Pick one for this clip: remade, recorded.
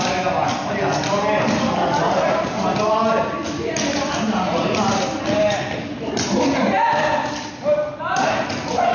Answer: recorded